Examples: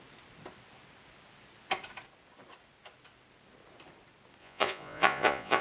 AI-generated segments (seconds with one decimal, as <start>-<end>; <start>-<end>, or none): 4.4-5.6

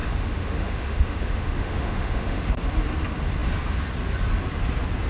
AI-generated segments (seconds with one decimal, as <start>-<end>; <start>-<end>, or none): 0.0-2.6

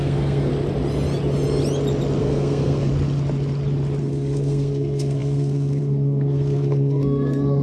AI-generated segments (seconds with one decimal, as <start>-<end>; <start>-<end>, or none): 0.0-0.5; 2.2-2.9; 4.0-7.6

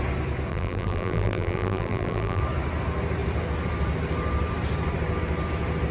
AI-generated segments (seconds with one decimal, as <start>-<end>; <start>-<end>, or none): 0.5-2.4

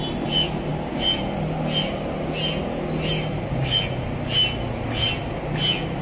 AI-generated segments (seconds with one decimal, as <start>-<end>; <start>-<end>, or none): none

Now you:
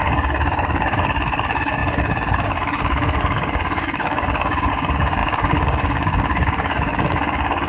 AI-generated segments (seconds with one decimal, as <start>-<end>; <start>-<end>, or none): 0.0-7.7

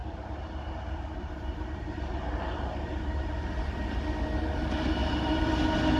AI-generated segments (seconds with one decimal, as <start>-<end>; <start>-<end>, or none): 0.0-3.6; 5.0-5.5